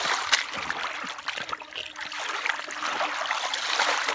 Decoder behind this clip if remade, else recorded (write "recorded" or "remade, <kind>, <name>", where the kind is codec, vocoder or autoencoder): recorded